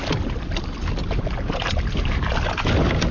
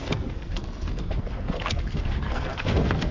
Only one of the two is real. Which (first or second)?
first